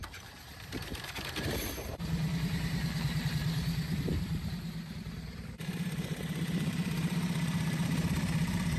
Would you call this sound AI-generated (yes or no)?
yes